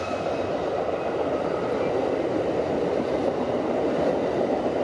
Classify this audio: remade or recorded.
recorded